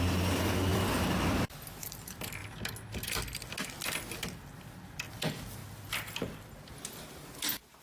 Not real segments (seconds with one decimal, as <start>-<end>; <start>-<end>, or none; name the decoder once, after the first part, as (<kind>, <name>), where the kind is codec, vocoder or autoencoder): 0.0-2.4 (vocoder, BigVGAN v2); 5.1-5.6